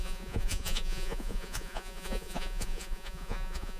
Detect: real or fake fake